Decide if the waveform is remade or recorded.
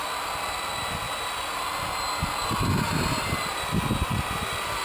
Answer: recorded